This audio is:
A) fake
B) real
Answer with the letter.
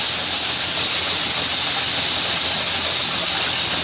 B